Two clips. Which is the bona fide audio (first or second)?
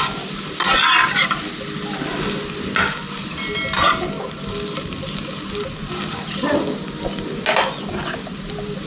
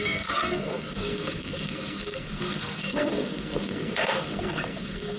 first